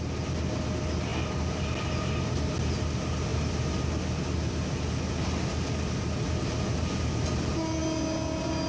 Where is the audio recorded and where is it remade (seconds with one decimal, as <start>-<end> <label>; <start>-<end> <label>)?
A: 0.0-8.7 recorded